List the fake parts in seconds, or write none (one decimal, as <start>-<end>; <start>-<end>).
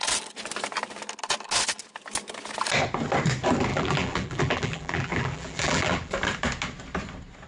3.7-6.1